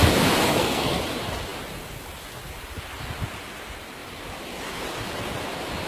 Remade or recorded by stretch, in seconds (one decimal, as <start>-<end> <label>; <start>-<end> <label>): 0.0-0.5 recorded; 0.5-1.0 remade; 1.0-5.9 recorded